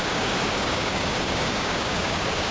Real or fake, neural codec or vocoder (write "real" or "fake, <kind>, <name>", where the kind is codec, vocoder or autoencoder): fake, codec, DAC